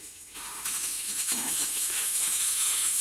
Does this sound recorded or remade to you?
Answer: remade